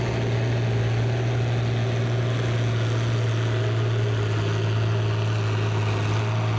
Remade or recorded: recorded